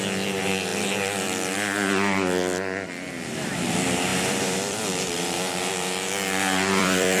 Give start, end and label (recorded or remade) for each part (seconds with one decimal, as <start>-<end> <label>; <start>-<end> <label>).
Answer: 0.0-4.1 recorded; 4.1-7.2 remade